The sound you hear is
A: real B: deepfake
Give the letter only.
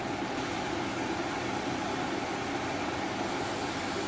A